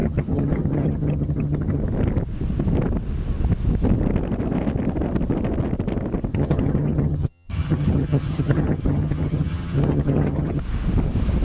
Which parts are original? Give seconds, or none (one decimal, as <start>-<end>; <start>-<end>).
1.8-6.3; 10.6-11.4